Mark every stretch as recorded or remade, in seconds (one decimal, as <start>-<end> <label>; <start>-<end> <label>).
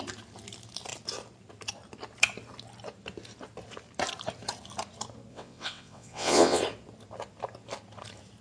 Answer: 0.0-5.3 recorded; 5.3-6.6 remade; 6.6-8.4 recorded